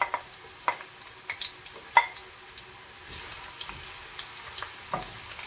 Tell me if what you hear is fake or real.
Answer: real